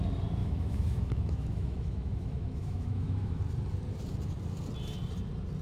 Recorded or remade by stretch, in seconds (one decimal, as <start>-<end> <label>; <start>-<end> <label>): 0.0-0.4 recorded; 0.4-3.4 remade; 3.4-5.6 recorded